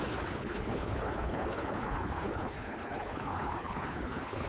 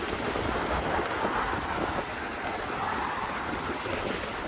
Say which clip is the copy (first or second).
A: first